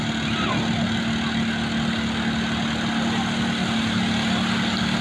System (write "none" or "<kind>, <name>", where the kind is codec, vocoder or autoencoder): none